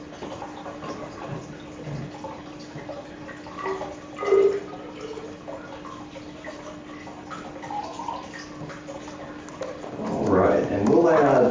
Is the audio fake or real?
real